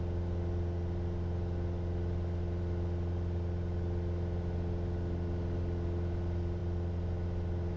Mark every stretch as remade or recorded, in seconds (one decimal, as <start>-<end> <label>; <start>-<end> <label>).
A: 0.0-7.8 recorded